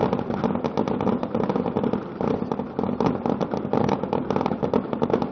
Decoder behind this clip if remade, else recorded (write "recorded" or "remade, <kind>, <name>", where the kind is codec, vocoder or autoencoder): recorded